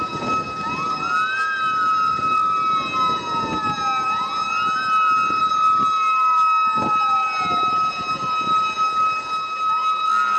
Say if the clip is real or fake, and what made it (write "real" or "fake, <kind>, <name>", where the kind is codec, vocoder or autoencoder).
real